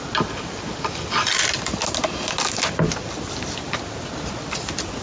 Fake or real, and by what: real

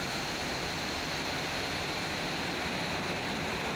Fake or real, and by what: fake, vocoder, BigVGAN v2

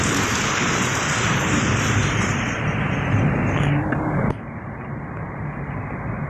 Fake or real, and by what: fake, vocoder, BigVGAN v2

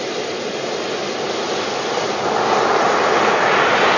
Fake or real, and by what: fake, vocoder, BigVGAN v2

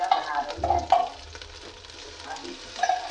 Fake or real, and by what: real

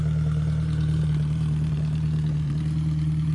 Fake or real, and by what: fake, vocoder, BigVGAN v2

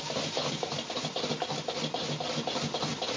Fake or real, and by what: real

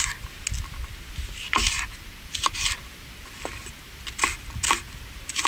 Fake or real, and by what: real